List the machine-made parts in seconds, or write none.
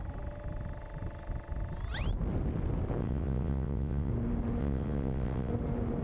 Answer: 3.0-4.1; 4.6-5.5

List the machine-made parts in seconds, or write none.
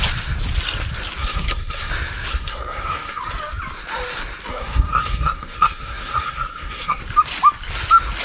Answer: 1.2-1.9; 2.3-3.2; 4.5-7.0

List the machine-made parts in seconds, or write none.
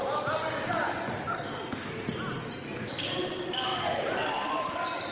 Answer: none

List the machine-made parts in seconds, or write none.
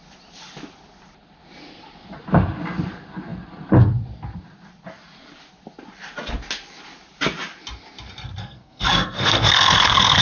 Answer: 8.4-10.2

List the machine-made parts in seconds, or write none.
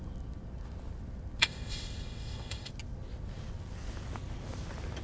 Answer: 1.4-2.7